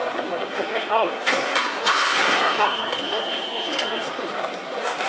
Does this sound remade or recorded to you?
remade